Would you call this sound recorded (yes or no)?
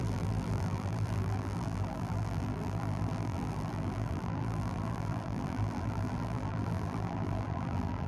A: no